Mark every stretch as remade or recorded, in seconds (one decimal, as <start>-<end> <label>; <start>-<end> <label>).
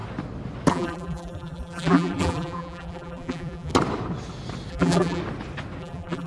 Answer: 0.0-0.7 recorded; 0.7-3.7 remade; 3.7-4.7 recorded; 4.7-5.2 remade; 5.2-5.8 recorded; 5.8-6.3 remade